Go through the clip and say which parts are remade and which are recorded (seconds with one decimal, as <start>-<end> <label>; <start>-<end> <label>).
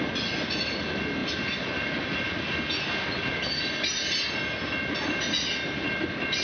0.0-6.4 recorded